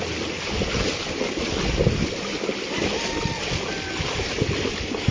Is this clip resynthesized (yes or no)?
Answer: no